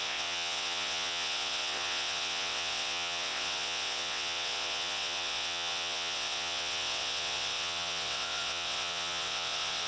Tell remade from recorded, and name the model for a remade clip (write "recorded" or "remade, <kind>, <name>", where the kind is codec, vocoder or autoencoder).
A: remade, vocoder, WaveNeXt